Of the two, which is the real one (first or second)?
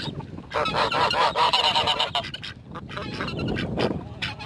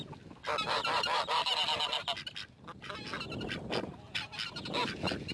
second